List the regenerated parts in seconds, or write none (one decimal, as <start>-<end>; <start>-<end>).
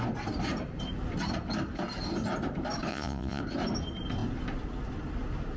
2.9-3.4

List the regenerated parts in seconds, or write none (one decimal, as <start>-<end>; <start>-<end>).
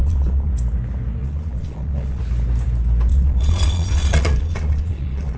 0.0-0.5; 1.2-2.2; 3.1-5.4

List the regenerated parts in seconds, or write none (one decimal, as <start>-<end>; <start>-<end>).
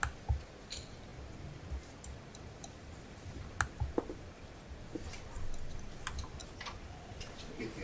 6.4-7.1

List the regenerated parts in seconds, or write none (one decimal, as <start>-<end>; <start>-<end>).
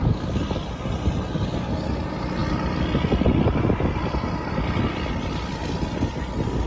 none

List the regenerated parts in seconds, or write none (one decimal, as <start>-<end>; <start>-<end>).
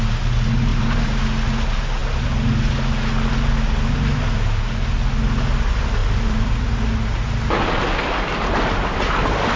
0.7-1.2; 6.0-6.8